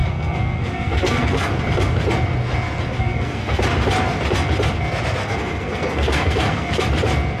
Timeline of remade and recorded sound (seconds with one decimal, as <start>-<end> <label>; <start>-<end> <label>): 0.0-1.5 remade; 1.5-3.0 recorded; 3.0-3.6 remade; 3.6-5.2 recorded; 5.2-6.8 remade; 6.8-7.4 recorded